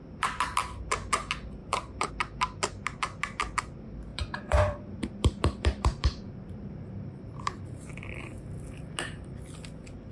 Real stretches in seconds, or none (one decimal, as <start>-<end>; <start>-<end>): 0.0-1.6; 2.1-4.1; 7.9-10.1

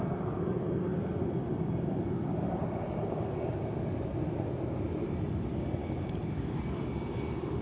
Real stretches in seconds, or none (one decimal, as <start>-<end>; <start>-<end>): 0.0-5.8; 6.6-7.6

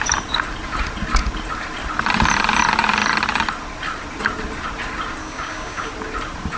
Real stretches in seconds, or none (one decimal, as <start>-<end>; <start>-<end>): 0.0-5.2; 5.9-6.6

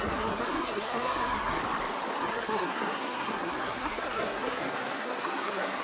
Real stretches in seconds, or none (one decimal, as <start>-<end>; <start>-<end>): 1.6-2.2